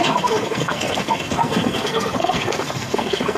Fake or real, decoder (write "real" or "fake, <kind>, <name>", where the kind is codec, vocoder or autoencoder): fake, codec, SNAC